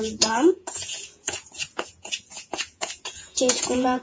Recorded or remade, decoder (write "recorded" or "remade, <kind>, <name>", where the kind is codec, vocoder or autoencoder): remade, vocoder, Vocos